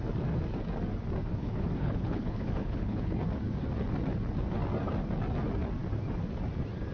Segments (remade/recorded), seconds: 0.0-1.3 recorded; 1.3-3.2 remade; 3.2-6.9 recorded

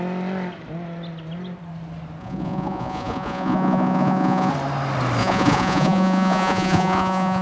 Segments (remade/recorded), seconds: 0.0-2.2 recorded; 2.2-4.5 remade; 4.5-5.2 recorded; 5.2-7.4 remade

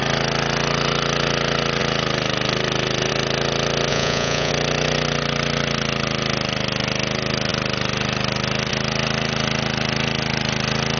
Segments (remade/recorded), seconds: 0.0-3.9 recorded; 3.9-4.5 remade; 4.5-11.0 recorded

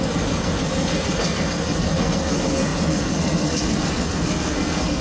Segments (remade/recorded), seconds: 0.0-5.0 remade

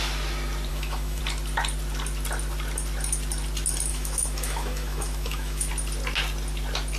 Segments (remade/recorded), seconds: 0.0-0.7 recorded; 0.7-1.2 remade; 1.2-3.9 recorded; 3.9-5.7 remade; 5.7-7.0 recorded

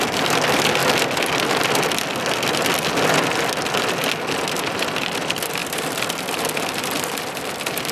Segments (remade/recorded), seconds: 0.0-0.8 remade; 0.8-4.6 recorded; 4.6-7.9 remade

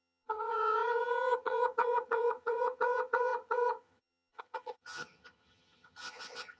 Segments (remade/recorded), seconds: 0.0-6.6 remade

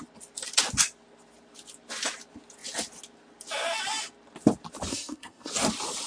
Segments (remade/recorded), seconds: 0.0-4.9 recorded; 4.9-5.5 remade; 5.5-6.1 recorded